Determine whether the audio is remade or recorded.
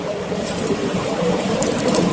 remade